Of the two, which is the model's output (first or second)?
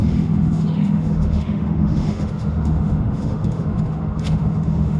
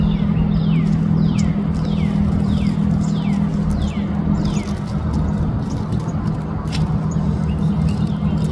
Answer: first